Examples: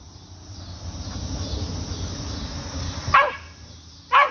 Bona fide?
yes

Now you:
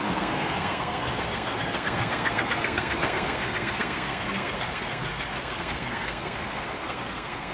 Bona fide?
no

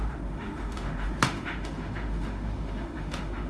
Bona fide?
no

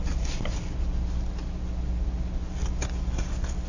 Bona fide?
yes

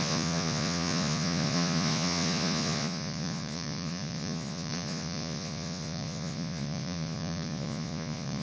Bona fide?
no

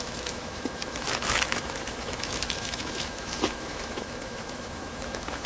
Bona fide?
no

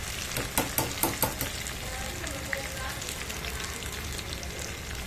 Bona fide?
yes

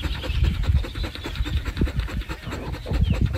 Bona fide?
yes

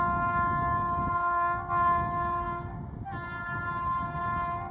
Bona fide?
yes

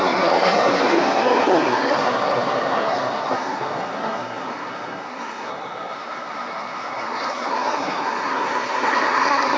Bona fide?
no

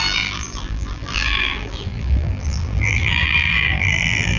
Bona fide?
no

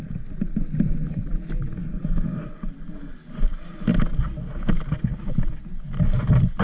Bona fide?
yes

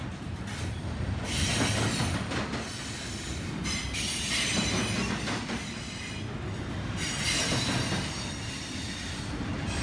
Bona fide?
yes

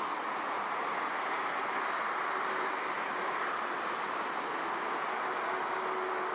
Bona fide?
yes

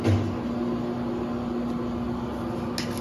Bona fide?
yes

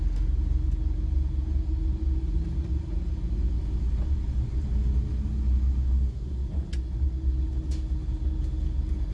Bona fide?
yes